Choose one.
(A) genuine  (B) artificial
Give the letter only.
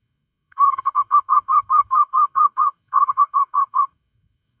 B